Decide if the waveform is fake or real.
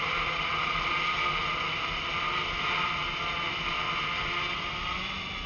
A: real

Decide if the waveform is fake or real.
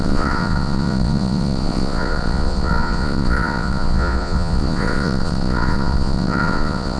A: fake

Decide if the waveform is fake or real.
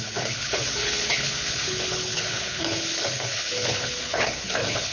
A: fake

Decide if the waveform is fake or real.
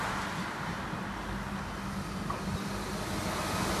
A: real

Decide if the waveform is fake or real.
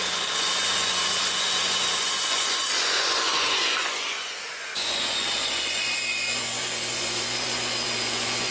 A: fake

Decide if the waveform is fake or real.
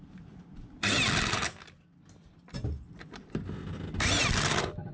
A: real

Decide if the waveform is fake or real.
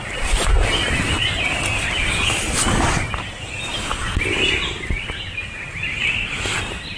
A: real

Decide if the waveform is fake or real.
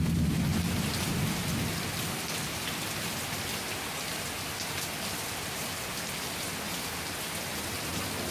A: real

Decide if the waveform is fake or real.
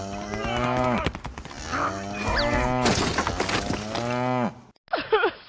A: real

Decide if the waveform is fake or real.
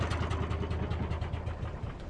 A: real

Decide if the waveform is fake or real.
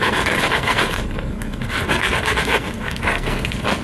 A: fake